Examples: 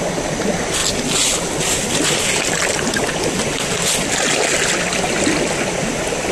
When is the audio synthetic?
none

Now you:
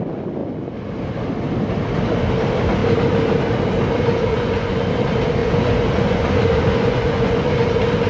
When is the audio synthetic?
4.3-4.8 (vocoder, Vocos); 5.4-7.5

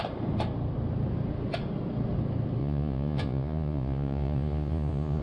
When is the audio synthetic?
2.6-5.2 (vocoder, Vocos)